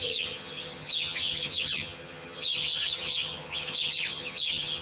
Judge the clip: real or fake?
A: fake